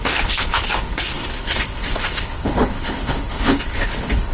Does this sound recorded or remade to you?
remade